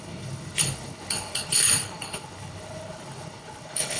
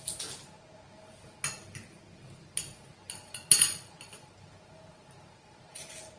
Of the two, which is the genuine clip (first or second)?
second